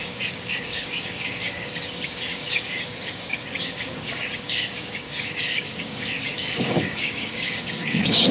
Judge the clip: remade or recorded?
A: remade